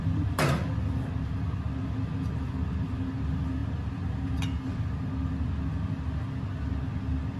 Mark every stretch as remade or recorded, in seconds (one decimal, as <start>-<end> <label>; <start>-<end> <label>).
0.0-7.4 recorded